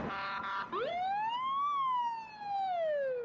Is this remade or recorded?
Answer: recorded